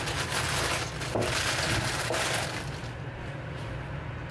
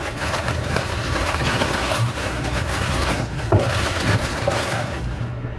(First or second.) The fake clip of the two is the second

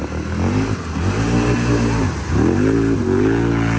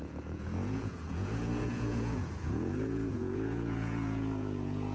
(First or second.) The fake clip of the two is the second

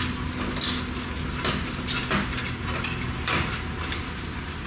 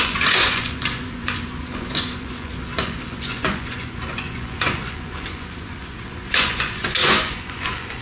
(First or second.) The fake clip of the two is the second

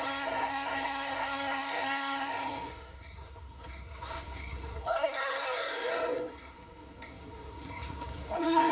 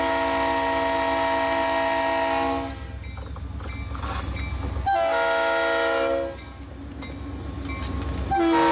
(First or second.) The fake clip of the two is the first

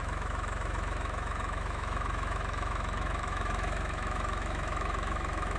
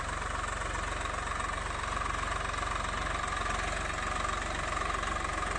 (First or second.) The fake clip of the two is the first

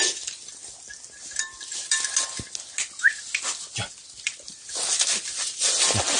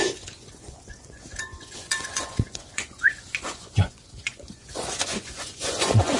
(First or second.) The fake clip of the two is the second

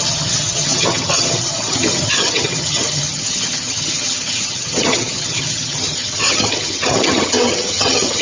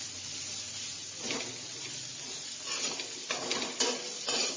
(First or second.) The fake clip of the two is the first